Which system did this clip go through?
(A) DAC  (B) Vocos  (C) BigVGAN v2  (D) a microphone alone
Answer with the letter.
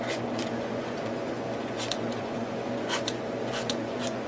B